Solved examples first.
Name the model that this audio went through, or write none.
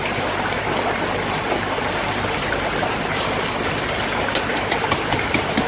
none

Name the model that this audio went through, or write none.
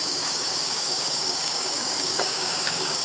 codec, DAC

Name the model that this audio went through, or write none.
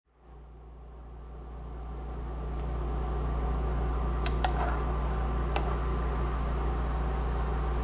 none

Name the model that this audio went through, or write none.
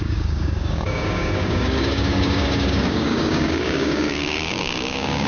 codec, DAC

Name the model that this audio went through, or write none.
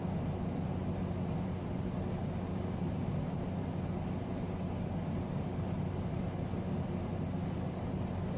none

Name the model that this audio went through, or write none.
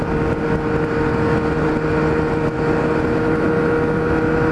none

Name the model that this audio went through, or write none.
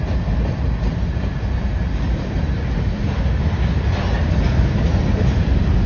none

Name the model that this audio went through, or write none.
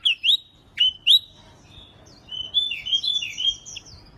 none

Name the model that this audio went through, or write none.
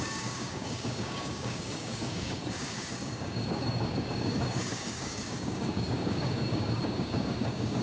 codec, DAC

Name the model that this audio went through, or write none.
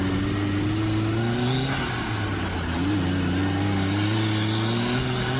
none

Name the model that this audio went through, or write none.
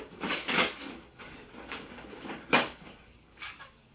codec, DAC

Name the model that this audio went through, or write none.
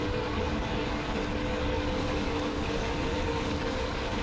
codec, DAC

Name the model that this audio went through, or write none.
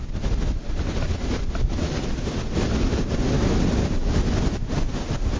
none